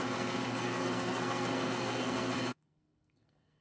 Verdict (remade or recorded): remade